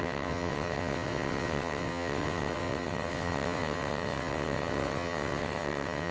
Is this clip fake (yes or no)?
yes